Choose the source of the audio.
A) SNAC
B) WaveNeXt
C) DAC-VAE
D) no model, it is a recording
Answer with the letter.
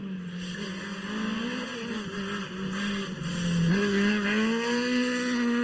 D